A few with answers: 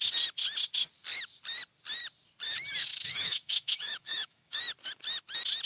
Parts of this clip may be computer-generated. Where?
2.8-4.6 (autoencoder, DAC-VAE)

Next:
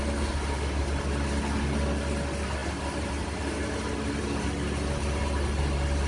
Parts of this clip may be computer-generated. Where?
none

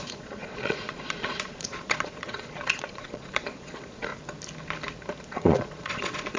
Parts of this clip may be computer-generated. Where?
0.0-4.1 (vocoder, Vocos); 5.2-6.4